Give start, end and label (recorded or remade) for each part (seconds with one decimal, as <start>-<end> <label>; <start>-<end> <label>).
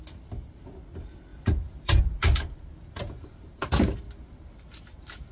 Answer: 0.0-1.3 recorded; 1.3-2.0 remade; 2.0-3.0 recorded; 3.0-3.7 remade; 3.7-5.3 recorded